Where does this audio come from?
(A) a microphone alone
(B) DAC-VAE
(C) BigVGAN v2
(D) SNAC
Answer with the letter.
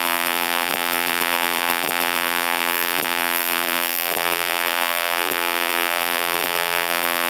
C